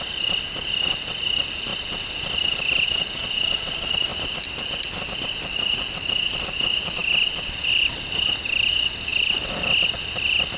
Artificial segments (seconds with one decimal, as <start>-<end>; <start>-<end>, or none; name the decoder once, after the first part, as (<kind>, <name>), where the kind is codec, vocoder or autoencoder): 1.7-2.5 (vocoder, BigVGAN v2); 4.1-5.3